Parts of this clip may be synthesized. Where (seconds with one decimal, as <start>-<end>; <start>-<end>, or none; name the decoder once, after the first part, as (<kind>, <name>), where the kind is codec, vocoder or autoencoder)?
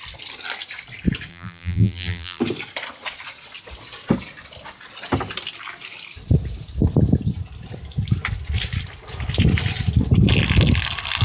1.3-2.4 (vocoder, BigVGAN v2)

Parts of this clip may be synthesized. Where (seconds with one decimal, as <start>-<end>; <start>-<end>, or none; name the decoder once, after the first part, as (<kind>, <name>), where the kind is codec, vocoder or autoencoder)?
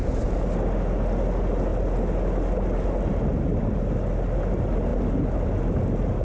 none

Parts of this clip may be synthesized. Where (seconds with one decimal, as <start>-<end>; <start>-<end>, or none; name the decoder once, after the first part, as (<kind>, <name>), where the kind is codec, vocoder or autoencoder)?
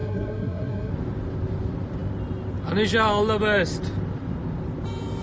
0.0-0.9 (codec, SNAC)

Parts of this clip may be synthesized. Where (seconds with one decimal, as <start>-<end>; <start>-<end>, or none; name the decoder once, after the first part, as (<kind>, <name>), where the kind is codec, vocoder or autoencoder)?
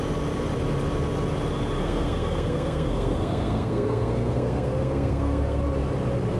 1.8-5.6 (codec, SNAC)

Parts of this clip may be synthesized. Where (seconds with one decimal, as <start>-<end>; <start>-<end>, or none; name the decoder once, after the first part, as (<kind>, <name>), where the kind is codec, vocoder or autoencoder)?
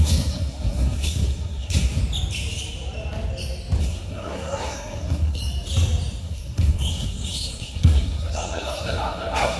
0.0-2.0 (codec, SNAC); 3.8-5.4; 6.2-9.6